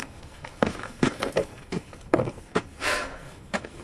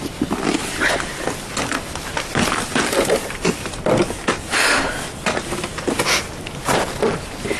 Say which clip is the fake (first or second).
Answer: first